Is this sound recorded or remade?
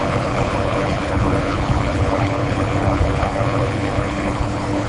remade